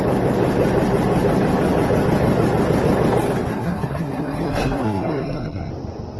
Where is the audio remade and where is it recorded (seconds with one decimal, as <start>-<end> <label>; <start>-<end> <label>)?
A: 0.0-3.5 recorded; 3.5-5.7 remade; 5.7-6.2 recorded

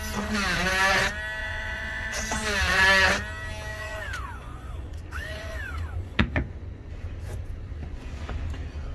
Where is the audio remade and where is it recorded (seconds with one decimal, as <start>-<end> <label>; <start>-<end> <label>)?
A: 0.0-1.4 recorded; 1.4-2.2 remade; 2.2-3.7 recorded; 3.7-6.9 remade; 6.9-7.8 recorded; 7.8-8.4 remade; 8.4-8.9 recorded

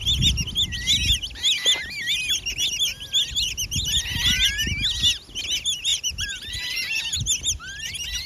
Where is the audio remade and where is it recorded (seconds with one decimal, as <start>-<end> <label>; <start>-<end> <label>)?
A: 0.0-5.9 recorded; 5.9-7.0 remade; 7.0-8.3 recorded

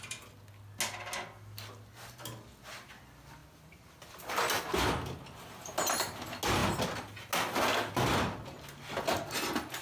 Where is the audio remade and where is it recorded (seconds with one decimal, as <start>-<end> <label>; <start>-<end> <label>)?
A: 0.0-9.8 recorded

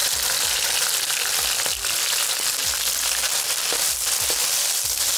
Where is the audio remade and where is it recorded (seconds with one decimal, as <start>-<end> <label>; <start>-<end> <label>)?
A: 0.0-5.2 recorded